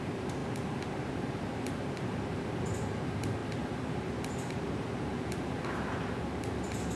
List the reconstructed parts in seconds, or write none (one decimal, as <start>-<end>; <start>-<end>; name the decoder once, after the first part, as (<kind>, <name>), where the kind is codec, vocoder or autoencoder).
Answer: 0.0-0.4 (vocoder, BigVGAN v2); 0.9-7.0